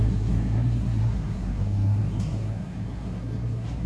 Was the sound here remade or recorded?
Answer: remade